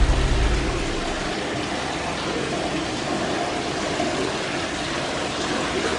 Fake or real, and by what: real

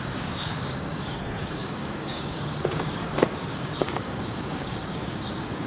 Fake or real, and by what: fake, codec, DAC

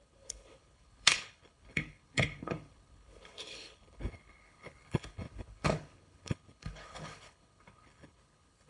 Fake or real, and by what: fake, codec, HILCodec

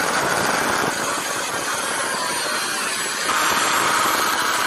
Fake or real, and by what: real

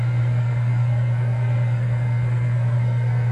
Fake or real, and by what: fake, codec, SNAC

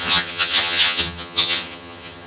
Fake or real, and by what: fake, vocoder, HiFi-GAN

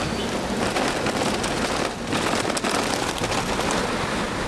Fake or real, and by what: real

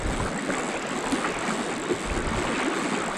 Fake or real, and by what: real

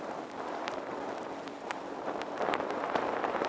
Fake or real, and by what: fake, vocoder, BigVGAN v2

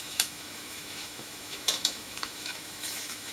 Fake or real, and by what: fake, autoencoder, DAC-VAE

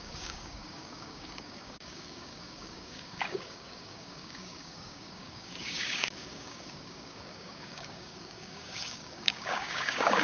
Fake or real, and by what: fake, codec, DAC